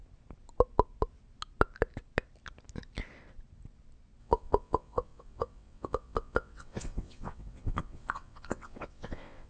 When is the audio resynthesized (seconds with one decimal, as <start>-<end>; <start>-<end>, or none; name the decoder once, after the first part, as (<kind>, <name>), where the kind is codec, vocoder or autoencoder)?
4.2-9.5 (vocoder, WaveNeXt)